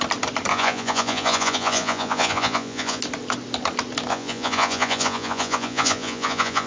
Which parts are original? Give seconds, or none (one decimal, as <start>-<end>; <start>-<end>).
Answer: 0.0-0.5; 3.0-4.1